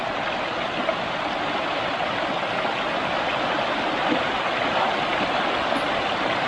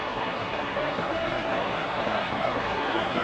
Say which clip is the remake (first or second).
second